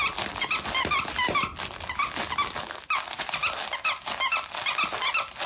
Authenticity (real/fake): real